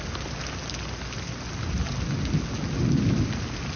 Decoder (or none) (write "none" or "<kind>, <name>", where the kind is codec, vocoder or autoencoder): none